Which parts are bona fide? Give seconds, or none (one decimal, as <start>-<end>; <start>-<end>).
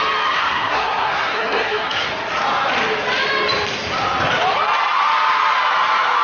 0.0-0.4; 2.1-6.2